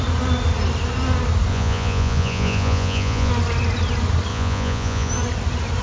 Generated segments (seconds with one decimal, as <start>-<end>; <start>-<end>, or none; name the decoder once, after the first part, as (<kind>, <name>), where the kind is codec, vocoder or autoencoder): 1.5-3.3 (vocoder, Vocos); 4.3-5.1